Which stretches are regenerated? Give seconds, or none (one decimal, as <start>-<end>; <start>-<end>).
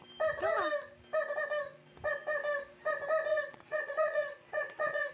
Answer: 3.3-5.1